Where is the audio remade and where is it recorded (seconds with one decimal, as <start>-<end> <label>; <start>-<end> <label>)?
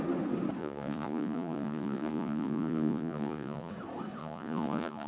0.0-0.6 recorded; 0.6-3.7 remade; 3.7-4.2 recorded; 4.2-5.1 remade